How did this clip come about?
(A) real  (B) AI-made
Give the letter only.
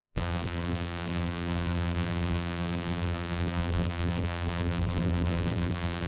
B